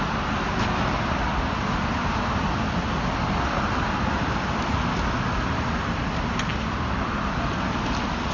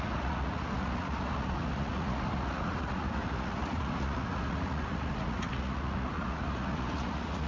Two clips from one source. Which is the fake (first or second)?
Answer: second